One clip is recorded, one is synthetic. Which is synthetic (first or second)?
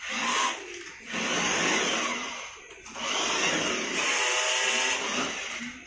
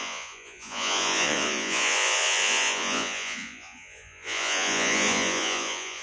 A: second